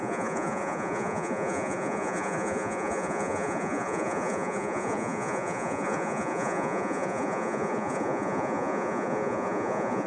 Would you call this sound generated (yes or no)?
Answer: yes